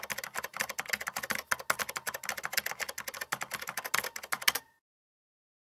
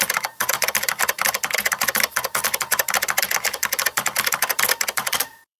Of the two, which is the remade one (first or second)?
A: second